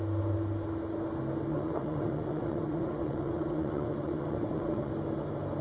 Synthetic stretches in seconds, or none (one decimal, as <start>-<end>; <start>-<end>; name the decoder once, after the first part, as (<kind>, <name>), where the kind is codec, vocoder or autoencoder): 1.5-4.9 (vocoder, WaveNeXt)